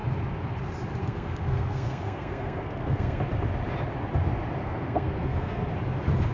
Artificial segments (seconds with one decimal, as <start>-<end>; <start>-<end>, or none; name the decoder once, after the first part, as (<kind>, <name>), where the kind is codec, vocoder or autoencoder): 1.0-3.2 (codec, SNAC); 4.6-5.7